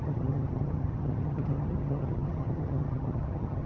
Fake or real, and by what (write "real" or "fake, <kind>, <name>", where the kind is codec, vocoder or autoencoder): fake, vocoder, HiFi-GAN